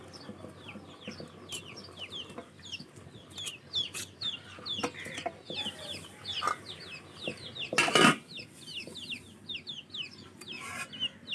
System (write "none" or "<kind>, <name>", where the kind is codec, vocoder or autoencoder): none